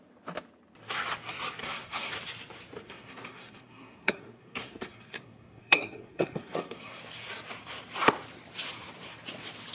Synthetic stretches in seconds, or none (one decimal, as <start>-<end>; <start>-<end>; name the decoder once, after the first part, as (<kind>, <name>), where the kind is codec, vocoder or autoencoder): 1.6-2.1 (codec, SNAC); 2.8-7.0